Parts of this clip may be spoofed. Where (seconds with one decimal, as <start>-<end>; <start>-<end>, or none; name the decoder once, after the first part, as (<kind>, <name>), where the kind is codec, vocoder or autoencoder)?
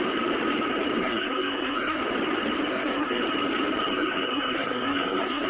1.0-2.0 (codec, SNAC); 2.7-3.2; 3.9-5.5